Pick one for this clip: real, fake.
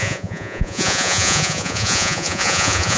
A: fake